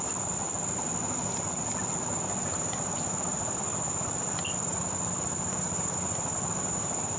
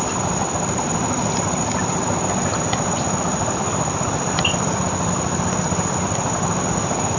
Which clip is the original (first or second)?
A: first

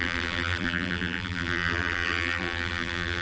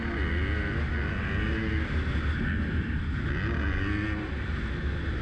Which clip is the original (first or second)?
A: second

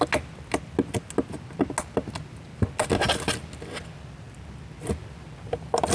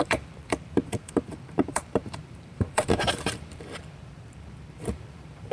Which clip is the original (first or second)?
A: first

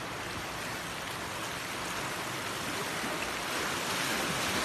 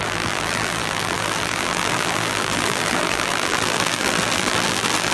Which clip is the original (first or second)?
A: first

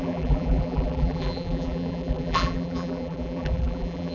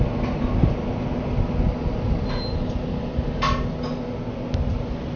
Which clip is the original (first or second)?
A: second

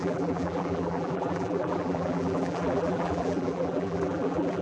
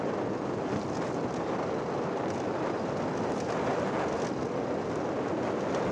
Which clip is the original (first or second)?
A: second